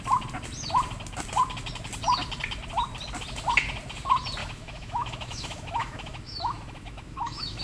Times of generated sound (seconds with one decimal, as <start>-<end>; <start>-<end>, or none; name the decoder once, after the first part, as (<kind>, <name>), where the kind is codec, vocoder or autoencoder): 4.4-7.6 (autoencoder, DAC-VAE)